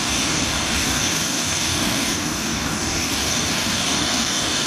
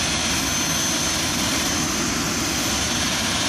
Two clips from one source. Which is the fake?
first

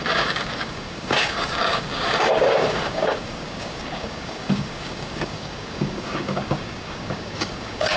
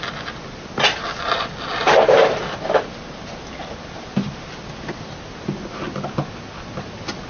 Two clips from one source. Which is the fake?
first